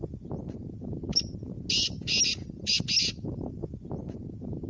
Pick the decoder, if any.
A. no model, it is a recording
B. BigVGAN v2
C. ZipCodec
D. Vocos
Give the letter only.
A